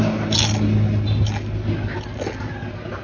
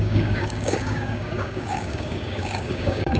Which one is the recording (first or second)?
first